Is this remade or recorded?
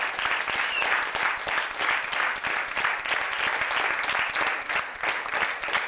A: recorded